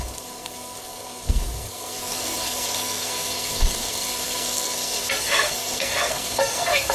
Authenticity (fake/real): fake